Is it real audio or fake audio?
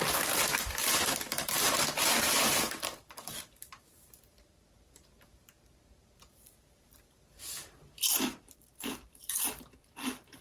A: fake